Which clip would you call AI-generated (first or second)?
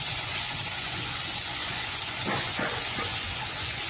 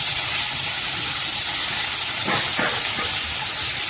first